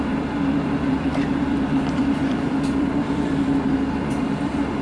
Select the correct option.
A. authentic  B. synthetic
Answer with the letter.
B